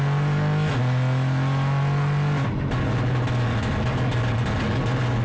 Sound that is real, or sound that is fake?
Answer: real